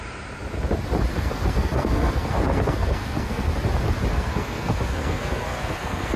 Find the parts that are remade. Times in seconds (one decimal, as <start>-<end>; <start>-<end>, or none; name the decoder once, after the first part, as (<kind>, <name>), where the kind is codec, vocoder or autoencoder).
1.1-3.5 (codec, SNAC); 4.1-6.2